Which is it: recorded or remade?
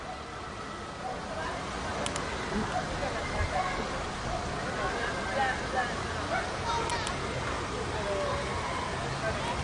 recorded